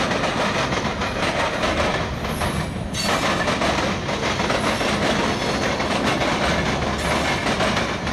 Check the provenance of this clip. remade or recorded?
recorded